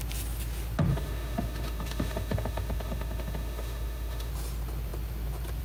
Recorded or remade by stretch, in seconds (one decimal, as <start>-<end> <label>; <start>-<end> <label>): 0.0-0.9 recorded; 0.9-4.3 remade; 4.3-5.6 recorded